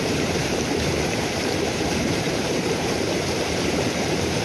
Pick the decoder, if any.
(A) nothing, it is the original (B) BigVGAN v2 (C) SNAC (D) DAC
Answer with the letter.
B